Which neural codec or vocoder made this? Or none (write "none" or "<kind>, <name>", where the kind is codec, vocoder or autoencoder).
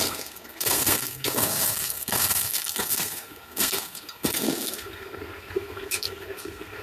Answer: codec, SNAC